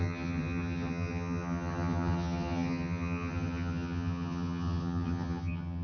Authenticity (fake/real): fake